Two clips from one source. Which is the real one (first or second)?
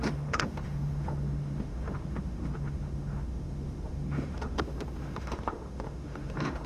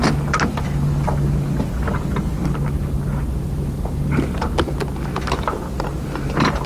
second